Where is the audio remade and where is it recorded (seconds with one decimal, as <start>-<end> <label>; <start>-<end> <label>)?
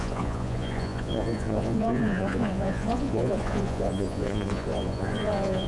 0.0-5.7 remade